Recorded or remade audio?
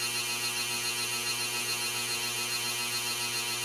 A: recorded